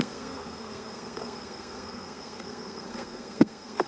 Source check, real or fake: fake